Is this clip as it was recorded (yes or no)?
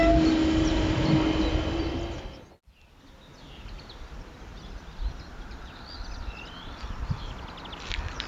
yes